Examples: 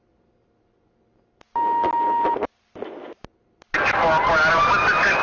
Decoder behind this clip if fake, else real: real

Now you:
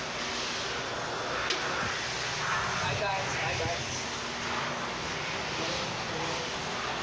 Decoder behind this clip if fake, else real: real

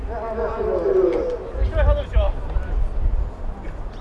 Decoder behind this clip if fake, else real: real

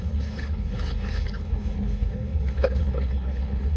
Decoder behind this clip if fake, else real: fake, codec, HILCodec